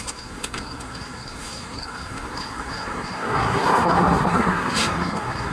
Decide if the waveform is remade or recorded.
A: remade